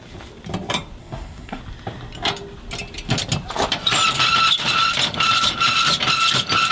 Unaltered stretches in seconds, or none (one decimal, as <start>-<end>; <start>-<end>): 0.0-1.0; 1.6-6.7